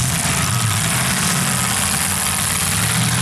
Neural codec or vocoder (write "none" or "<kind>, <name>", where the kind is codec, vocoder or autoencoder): none